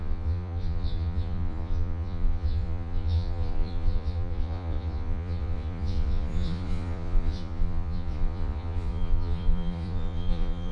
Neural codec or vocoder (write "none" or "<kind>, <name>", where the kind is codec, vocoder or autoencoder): vocoder, Vocos